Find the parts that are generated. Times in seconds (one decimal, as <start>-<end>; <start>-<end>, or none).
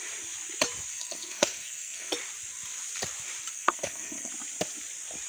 0.9-2.1; 3.5-4.3